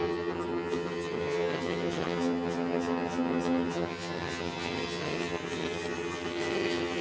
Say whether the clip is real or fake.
fake